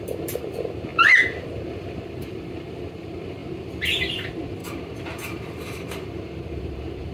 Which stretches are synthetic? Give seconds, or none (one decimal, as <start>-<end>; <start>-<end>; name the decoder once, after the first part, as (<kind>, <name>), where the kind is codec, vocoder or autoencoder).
0.0-3.4 (vocoder, BigVGAN v2); 4.1-7.1